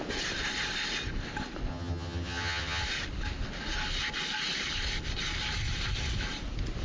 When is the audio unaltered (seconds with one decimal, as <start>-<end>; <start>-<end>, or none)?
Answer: 0.0-1.7; 2.8-6.8